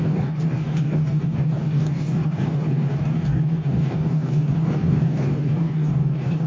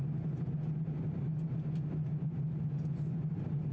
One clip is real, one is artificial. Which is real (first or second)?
second